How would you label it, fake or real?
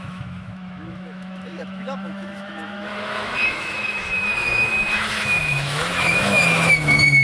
fake